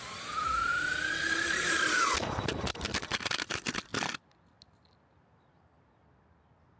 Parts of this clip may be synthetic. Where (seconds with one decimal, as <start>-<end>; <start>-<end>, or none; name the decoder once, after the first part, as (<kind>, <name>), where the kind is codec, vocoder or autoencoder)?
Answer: none